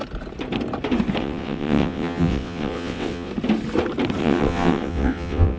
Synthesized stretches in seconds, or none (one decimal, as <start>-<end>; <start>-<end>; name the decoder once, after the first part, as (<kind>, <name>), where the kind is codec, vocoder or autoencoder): 1.2-3.3 (vocoder, WaveNeXt); 4.2-5.6